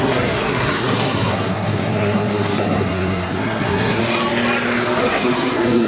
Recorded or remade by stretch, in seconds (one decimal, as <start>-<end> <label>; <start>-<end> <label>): 0.0-4.0 remade; 4.0-5.0 recorded; 5.0-5.9 remade